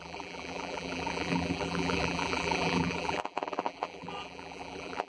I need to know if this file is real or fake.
fake